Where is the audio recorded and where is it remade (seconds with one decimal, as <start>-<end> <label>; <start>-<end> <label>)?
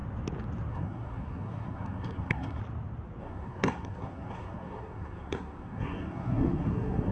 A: 0.0-0.7 recorded; 0.7-2.6 remade; 2.6-3.2 recorded; 3.2-7.1 remade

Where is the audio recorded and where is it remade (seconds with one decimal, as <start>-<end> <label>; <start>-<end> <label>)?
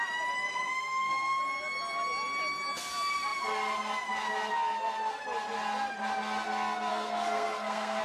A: 0.0-0.5 recorded; 0.5-1.4 remade; 1.4-6.9 recorded; 6.9-8.0 remade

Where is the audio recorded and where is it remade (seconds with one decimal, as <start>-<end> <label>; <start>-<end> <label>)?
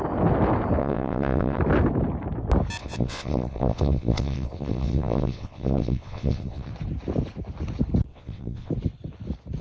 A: 0.0-0.8 recorded; 0.8-1.6 remade; 1.6-2.8 recorded; 2.8-6.7 remade; 6.7-8.1 recorded; 8.1-8.7 remade; 8.7-9.6 recorded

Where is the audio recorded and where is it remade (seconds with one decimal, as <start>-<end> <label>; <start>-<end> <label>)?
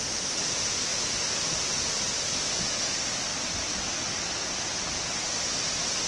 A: 0.0-6.1 recorded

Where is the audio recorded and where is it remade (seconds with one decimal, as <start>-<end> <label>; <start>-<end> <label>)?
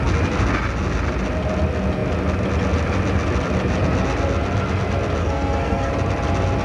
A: 0.0-5.2 recorded; 5.2-5.9 remade; 5.9-6.6 recorded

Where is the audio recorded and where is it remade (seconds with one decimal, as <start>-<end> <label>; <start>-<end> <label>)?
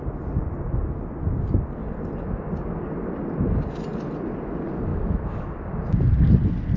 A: 0.0-4.9 recorded; 4.9-5.4 remade; 5.4-6.8 recorded